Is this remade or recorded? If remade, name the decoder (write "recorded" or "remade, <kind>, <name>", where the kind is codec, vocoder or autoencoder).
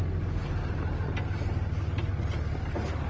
recorded